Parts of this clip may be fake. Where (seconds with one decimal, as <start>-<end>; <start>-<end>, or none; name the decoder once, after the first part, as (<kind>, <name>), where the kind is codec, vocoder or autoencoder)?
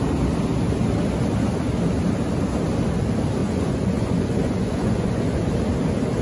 3.4-5.4 (vocoder, Vocos)